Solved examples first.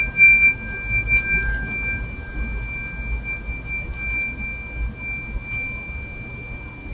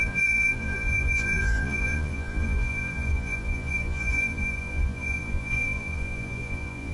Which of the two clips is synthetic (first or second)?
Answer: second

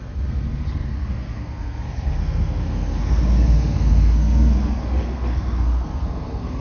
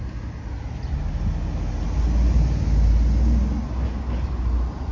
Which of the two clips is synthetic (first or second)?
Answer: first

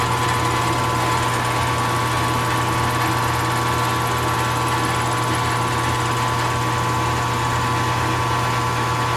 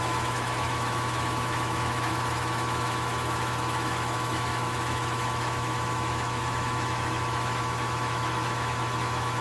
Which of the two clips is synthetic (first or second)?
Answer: second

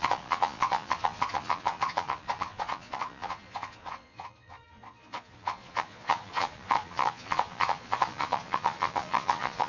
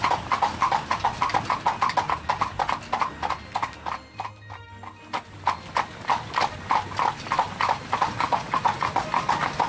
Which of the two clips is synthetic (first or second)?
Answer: first